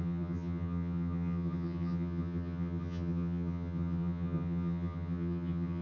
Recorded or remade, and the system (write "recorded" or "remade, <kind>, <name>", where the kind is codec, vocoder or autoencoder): remade, vocoder, HiFi-GAN